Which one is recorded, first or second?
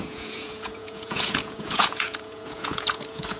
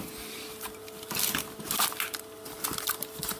second